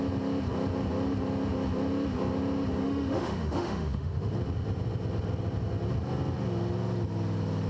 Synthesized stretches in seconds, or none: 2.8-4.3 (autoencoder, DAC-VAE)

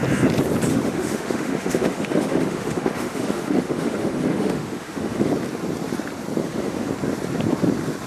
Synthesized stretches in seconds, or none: 0.7-5.3 (autoencoder, DAC-VAE); 6.4-6.9

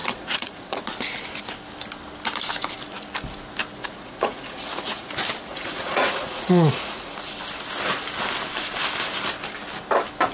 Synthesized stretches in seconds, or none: 0.0-0.8 (vocoder, Vocos); 3.8-5.1; 5.5-7.3

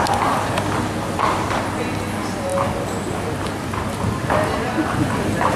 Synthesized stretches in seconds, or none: none

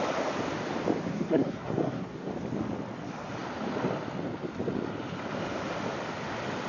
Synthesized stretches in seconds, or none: 1.1-2.3 (codec, SNAC)

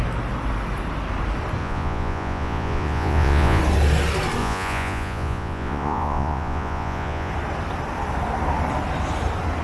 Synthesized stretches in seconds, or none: 1.6-3.6 (vocoder, Vocos); 4.4-7.3

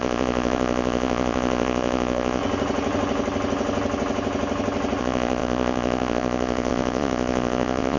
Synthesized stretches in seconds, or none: 0.0-2.4 (vocoder, Vocos); 5.0-8.0

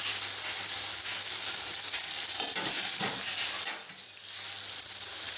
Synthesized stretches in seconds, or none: none